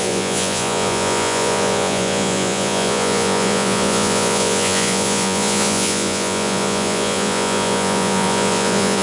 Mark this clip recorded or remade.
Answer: remade